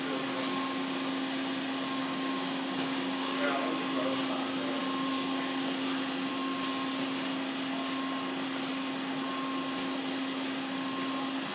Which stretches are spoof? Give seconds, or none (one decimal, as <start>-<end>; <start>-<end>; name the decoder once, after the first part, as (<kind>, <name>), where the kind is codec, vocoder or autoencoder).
2.0-3.7 (codec, DAC)